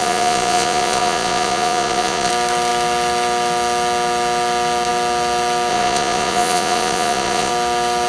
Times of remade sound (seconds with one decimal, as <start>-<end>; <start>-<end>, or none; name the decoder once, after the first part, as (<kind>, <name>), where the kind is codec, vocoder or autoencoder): 0.0-2.3 (vocoder, Vocos); 5.7-7.5